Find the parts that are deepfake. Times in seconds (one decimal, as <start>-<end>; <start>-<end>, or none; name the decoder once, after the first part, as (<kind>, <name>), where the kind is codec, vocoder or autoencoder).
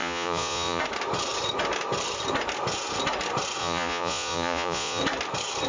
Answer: 0.0-0.8 (vocoder, Vocos); 3.6-5.0